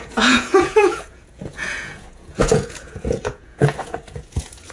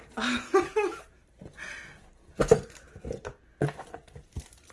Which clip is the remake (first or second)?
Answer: first